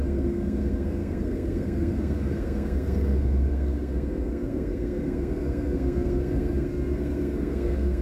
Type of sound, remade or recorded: remade